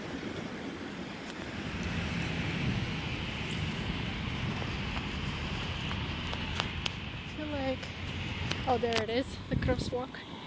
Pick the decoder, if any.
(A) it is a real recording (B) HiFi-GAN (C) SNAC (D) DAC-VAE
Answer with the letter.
A